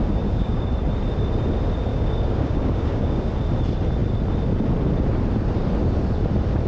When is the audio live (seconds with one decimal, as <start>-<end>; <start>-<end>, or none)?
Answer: 0.7-1.9; 3.3-6.7